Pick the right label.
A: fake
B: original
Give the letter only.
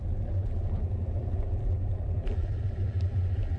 A